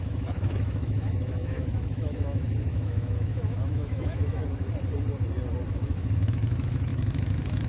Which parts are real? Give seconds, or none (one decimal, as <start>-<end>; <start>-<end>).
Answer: 4.4-5.7